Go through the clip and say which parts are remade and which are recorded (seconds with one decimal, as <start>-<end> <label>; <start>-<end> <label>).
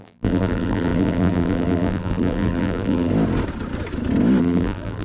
0.0-3.1 remade; 3.1-4.4 recorded; 4.4-5.0 remade